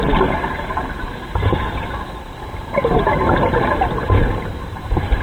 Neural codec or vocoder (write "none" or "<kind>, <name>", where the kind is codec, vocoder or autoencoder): vocoder, BigVGAN v2